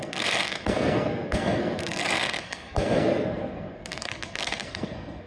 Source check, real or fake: fake